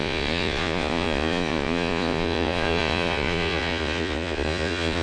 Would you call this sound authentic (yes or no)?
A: no